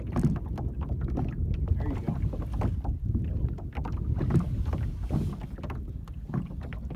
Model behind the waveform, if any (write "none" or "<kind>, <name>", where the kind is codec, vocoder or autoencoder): none